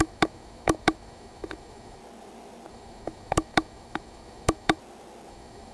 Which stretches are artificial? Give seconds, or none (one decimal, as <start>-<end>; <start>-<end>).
0.0-2.0; 2.7-4.8; 5.3-5.7